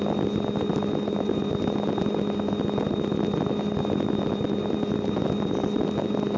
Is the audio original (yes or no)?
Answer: yes